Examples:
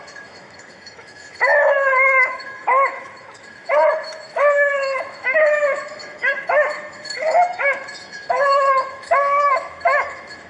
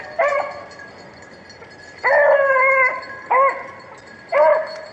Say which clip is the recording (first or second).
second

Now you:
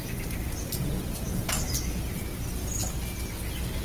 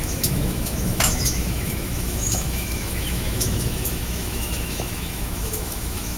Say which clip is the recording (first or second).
first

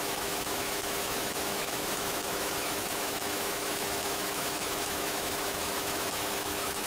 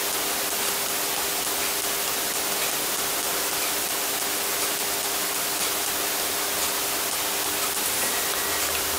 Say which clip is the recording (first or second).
second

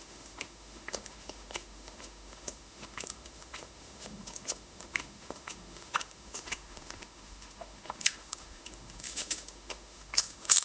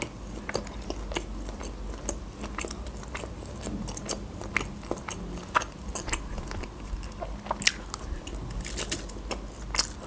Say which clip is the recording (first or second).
second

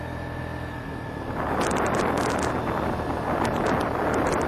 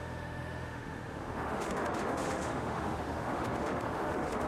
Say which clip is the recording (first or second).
first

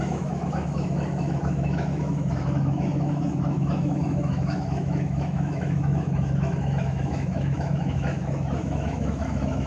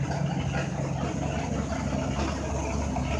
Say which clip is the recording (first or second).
second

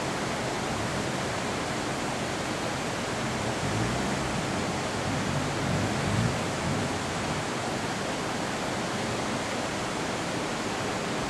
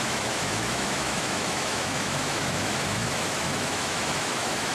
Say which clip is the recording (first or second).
first